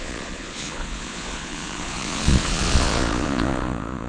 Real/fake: fake